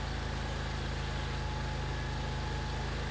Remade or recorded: recorded